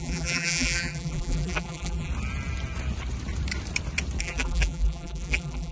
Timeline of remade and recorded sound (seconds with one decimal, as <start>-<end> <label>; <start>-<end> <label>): 0.0-2.1 remade; 2.1-4.2 recorded; 4.2-5.7 remade